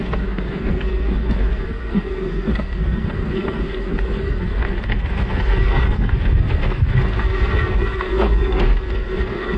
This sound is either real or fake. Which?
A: fake